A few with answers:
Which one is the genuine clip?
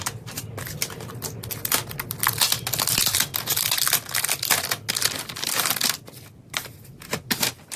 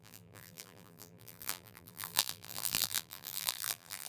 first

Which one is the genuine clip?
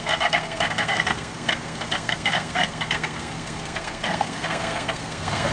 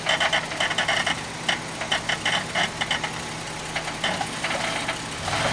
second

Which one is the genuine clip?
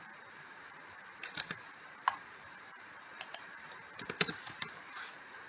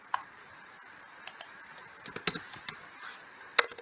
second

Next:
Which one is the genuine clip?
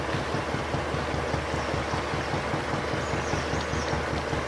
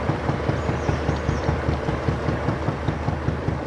first